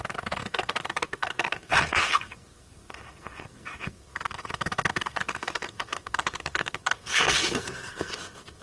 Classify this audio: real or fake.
fake